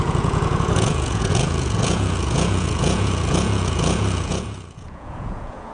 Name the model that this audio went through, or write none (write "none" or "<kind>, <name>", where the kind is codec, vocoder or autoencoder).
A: vocoder, Vocos